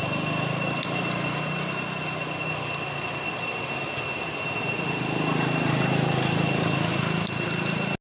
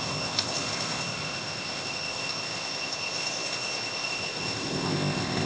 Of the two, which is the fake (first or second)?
second